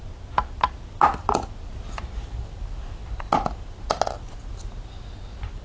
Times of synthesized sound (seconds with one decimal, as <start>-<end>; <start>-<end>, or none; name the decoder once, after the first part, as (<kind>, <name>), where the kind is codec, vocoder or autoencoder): none